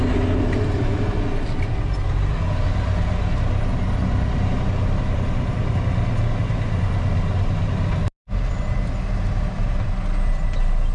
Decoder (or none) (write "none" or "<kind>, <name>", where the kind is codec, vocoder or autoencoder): none